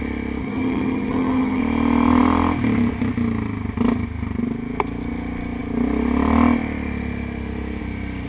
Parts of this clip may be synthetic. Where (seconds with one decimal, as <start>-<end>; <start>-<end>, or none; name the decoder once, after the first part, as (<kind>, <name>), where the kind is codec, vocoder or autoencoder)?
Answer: 0.4-1.6 (vocoder, HiFi-GAN)